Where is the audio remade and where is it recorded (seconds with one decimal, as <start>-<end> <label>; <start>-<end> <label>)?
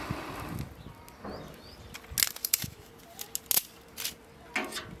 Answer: 0.0-2.4 recorded; 2.4-2.9 remade; 2.9-5.0 recorded